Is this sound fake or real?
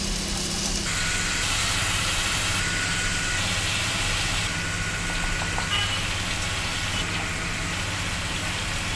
real